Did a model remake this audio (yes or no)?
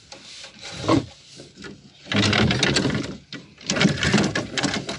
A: no